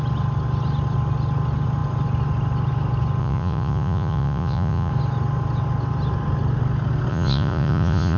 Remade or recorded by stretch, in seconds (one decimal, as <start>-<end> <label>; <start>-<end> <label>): 0.0-3.2 recorded; 3.2-4.9 remade; 4.9-7.1 recorded; 7.1-8.2 remade